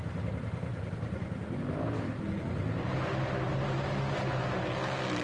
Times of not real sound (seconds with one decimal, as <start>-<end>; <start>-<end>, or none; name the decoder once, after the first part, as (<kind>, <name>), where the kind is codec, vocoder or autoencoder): none